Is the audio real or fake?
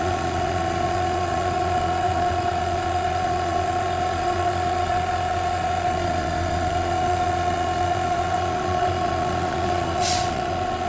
fake